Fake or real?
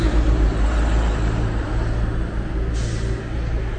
real